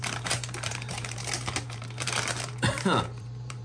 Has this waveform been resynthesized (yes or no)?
yes